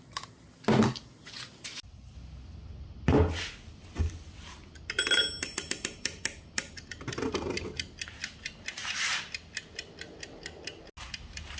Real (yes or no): yes